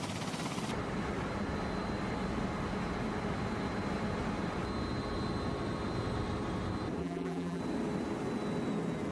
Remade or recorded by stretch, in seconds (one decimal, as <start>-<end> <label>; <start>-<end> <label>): 0.0-7.0 recorded; 7.0-7.6 remade; 7.6-9.1 recorded